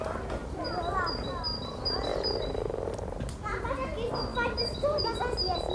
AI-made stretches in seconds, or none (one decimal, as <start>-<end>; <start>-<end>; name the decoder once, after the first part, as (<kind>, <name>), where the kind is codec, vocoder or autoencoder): 0.4-1.1 (vocoder, BigVGAN v2); 2.1-3.3; 4.3-5.0